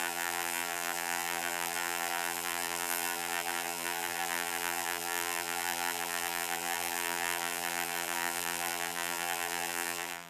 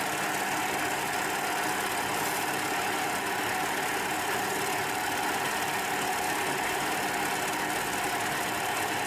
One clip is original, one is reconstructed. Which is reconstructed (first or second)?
first